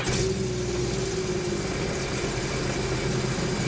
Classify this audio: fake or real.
real